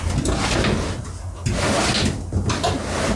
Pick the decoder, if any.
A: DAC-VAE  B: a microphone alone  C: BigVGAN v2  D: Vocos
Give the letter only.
B